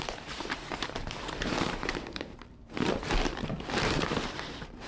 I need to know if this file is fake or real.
fake